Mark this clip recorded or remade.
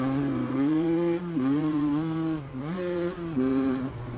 remade